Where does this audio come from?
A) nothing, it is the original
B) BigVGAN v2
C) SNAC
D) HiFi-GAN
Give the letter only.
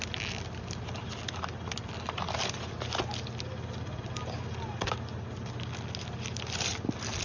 A